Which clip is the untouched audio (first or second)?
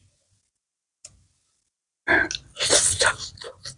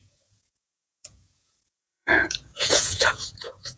first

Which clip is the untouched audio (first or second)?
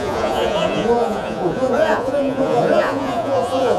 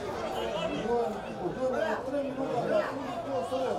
second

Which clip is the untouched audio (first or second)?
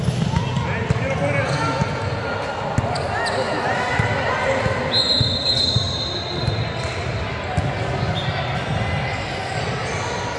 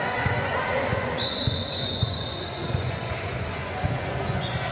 first